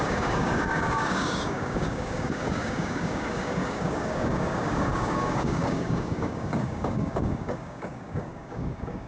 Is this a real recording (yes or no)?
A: no